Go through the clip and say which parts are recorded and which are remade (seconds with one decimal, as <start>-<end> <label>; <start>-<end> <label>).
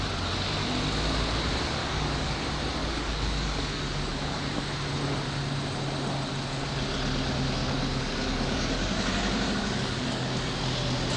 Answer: 0.0-1.8 recorded; 1.8-2.4 remade; 2.4-2.8 recorded; 2.8-4.7 remade; 4.7-7.6 recorded; 7.6-10.6 remade; 10.6-11.2 recorded